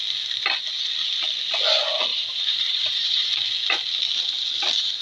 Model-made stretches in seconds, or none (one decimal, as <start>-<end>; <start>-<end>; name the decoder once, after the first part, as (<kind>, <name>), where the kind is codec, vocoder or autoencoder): 2.1-3.3 (vocoder, BigVGAN v2)